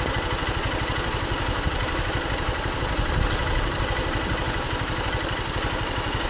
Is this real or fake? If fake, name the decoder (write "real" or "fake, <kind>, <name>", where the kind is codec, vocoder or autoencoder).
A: real